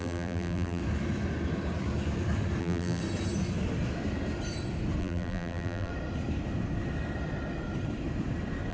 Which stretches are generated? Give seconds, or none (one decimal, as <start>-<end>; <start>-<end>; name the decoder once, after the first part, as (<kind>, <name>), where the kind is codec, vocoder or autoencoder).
0.0-0.8 (vocoder, BigVGAN v2); 2.6-3.0; 5.0-5.9